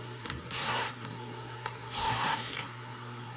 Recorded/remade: remade